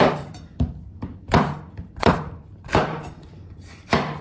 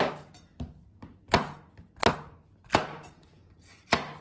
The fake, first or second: first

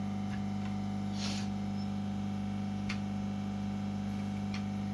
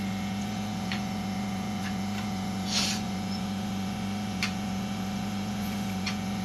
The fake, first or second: second